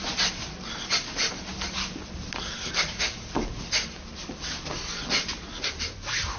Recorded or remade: recorded